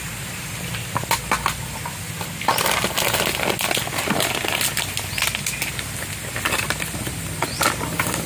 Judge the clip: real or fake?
real